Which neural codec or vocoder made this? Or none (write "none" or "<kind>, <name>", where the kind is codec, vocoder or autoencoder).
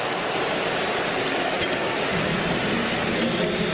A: none